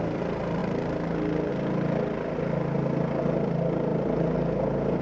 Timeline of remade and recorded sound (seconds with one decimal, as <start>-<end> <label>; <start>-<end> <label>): 0.0-5.0 recorded

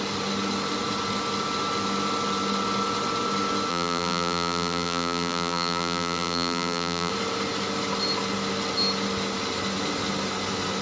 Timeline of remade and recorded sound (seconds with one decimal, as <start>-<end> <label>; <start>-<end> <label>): 0.0-3.7 recorded; 3.7-7.1 remade; 7.1-10.8 recorded